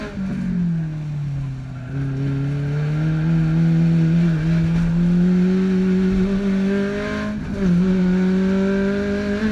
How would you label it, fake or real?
real